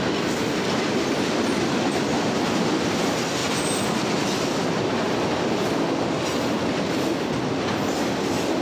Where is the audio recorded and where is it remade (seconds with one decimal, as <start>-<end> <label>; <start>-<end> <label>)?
0.0-8.6 recorded